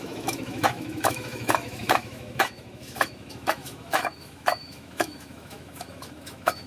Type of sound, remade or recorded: remade